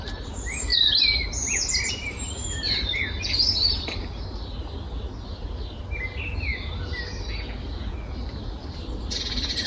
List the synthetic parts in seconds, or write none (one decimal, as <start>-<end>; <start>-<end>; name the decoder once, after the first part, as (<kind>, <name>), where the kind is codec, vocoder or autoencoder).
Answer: none